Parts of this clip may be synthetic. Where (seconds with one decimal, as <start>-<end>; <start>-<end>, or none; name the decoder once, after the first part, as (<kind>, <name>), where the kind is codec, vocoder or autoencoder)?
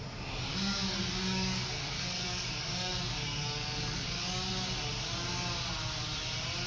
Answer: 0.5-4.5 (codec, DAC)